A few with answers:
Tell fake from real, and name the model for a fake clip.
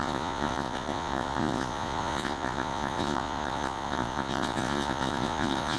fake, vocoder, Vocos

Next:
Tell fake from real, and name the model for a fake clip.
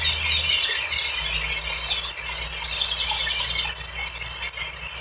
real